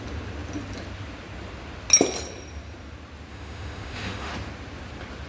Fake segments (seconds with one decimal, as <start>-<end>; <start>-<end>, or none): 3.3-4.3